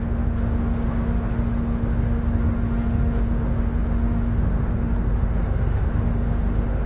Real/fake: fake